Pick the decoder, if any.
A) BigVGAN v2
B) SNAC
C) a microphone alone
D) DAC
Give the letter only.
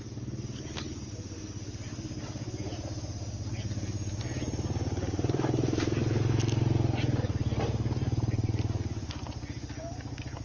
C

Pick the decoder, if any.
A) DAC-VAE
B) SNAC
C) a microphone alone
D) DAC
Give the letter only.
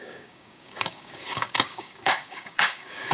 D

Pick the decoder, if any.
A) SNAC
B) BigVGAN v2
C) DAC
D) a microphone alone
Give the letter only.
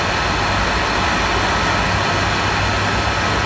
D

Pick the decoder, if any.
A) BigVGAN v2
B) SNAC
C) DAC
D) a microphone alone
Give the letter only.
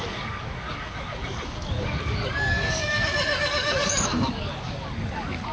C